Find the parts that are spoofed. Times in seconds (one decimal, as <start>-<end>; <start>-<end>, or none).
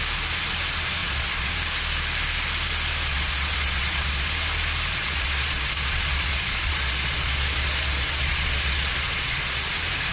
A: 1.0-1.5; 3.1-4.3; 5.0-9.7